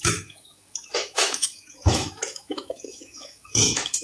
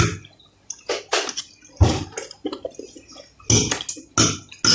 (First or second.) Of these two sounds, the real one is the second